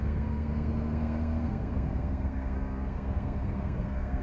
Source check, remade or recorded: remade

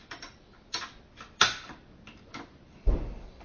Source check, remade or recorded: remade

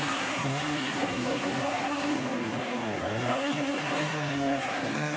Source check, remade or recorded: remade